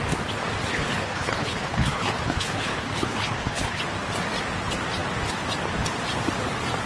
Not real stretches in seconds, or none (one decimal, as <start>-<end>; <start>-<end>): 0.7-3.8